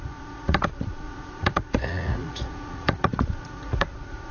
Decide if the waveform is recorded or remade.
remade